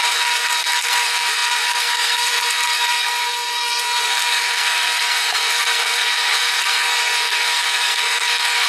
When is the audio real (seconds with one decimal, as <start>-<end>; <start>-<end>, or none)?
none